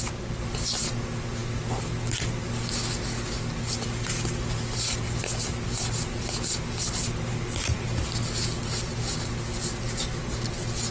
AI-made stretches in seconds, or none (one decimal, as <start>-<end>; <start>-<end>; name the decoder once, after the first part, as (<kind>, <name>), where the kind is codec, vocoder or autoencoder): none